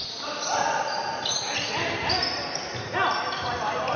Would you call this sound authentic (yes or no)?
yes